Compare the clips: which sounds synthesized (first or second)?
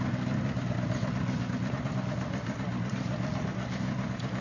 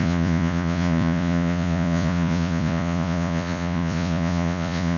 second